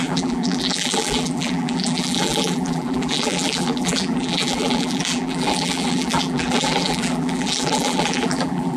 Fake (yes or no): yes